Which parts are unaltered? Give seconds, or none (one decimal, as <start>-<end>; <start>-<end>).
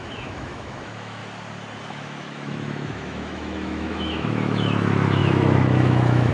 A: 1.2-1.9